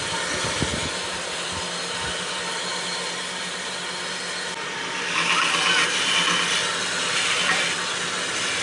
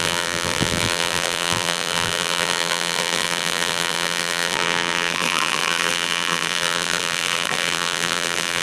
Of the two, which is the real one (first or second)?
first